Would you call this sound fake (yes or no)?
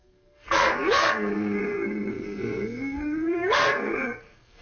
yes